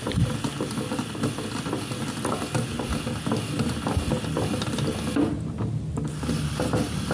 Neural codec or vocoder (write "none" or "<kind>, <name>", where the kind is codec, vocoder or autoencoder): none